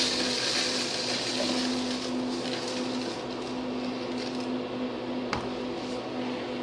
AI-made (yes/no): no